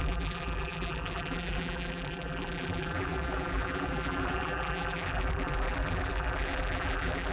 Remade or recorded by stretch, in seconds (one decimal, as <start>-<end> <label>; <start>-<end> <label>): 0.0-7.3 remade